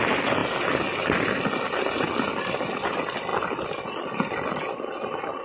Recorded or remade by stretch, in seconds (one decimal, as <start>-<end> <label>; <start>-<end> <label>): 0.0-5.4 recorded

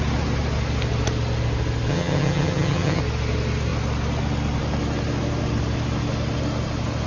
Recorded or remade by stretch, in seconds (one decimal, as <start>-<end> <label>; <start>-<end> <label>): 0.0-1.9 recorded; 1.9-3.0 remade; 3.0-7.1 recorded

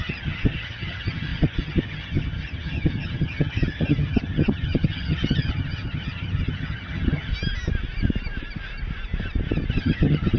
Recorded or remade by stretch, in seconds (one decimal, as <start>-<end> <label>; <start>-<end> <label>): 0.0-7.3 remade; 7.3-9.7 recorded; 9.7-10.4 remade

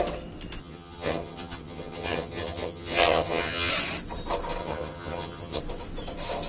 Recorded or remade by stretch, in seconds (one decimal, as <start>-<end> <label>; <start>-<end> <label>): 0.0-0.6 recorded; 0.6-3.7 remade; 3.7-4.6 recorded; 4.6-5.6 remade; 5.6-6.5 recorded

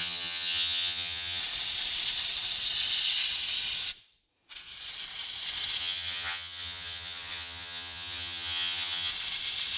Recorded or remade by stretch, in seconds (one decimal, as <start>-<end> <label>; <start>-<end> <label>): 0.0-1.4 remade; 1.4-5.8 recorded; 5.8-9.1 remade; 9.1-9.8 recorded

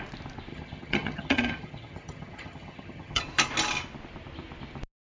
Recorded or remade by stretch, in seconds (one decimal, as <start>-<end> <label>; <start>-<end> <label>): 0.0-0.5 recorded; 0.5-3.2 remade; 3.2-5.0 recorded

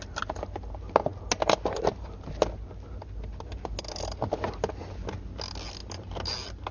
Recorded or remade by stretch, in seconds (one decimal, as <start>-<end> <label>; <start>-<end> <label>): 0.0-6.7 recorded